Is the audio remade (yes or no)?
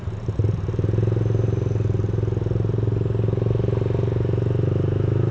no